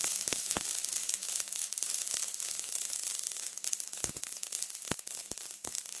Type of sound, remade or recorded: remade